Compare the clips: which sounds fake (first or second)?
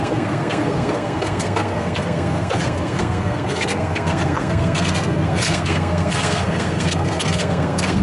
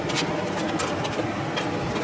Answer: first